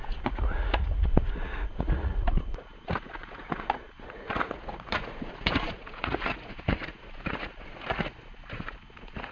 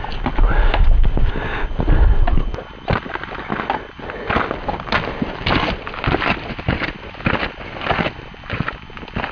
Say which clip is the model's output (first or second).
first